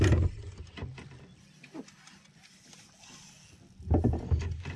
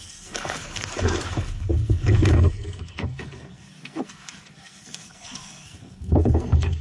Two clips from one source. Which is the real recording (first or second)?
first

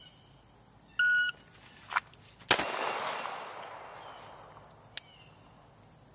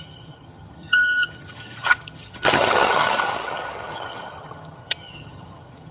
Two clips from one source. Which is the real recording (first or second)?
first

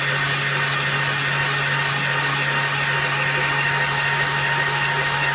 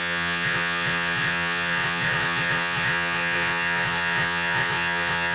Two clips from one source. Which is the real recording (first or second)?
first